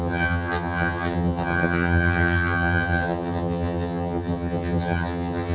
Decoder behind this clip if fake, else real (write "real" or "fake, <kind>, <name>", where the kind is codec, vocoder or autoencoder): fake, vocoder, HiFi-GAN